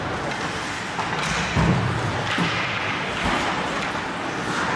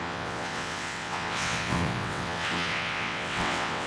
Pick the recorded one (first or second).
first